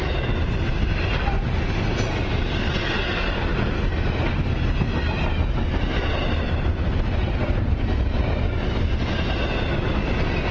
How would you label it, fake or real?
real